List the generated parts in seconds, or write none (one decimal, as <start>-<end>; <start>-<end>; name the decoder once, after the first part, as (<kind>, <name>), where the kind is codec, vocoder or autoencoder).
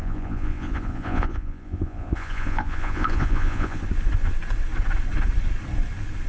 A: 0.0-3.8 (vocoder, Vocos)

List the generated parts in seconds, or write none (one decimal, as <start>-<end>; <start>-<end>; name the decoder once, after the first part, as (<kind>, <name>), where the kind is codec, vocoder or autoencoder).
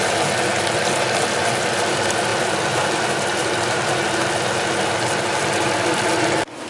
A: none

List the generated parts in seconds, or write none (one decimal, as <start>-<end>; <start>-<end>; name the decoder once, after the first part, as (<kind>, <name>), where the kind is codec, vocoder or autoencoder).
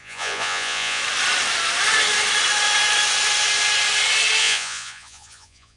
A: 0.0-1.0 (vocoder, Vocos); 4.4-5.8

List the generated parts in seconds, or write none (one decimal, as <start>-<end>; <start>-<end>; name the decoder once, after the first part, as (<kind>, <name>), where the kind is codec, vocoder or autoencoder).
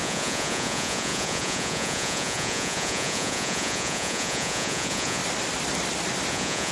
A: 0.0-5.2 (vocoder, Vocos); 6.3-6.7